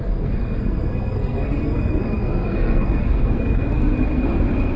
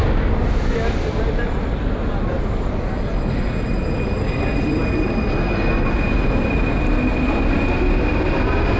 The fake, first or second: first